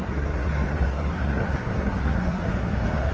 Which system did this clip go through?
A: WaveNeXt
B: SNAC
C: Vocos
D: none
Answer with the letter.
B